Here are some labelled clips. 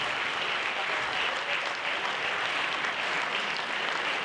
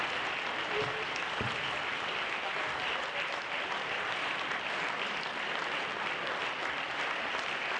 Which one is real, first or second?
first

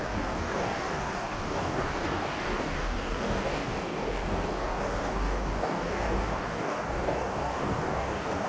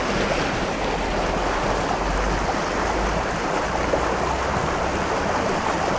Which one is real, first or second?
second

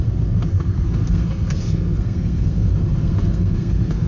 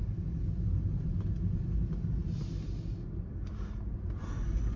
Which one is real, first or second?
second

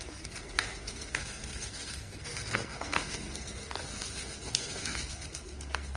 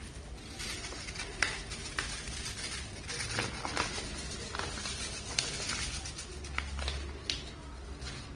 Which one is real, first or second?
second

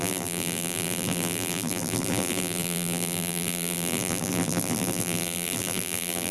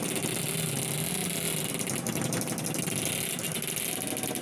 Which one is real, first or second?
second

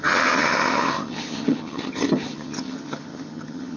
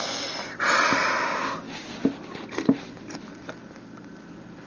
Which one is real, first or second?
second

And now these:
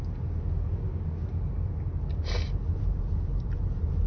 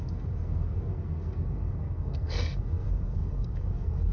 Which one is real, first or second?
first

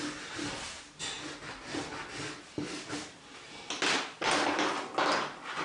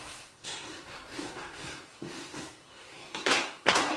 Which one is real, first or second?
first